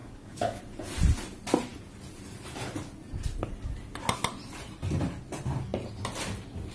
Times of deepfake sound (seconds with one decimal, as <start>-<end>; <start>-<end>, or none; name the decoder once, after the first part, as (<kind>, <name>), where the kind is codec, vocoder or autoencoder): 0.0-0.6 (codec, DAC)